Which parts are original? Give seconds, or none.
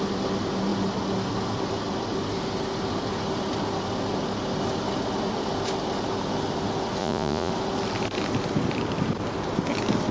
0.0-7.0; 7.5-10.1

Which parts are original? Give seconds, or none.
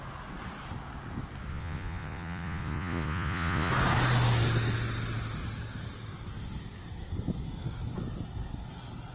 0.0-1.5; 3.7-9.1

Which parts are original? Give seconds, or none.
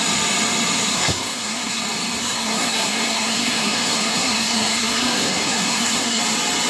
0.0-0.9; 1.8-2.2; 6.2-6.7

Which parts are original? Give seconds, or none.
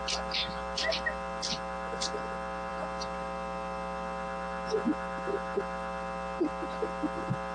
0.0-7.5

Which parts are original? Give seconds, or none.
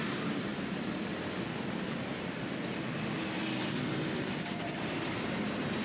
none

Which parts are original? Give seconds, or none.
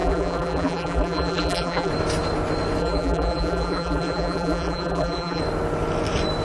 1.9-2.8; 5.4-6.4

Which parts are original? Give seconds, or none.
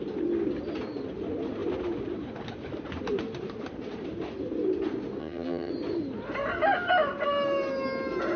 0.0-5.2; 5.7-8.4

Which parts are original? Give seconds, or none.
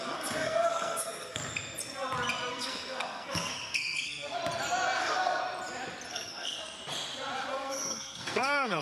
1.4-2.5; 4.4-5.0; 5.4-6.1; 6.8-7.5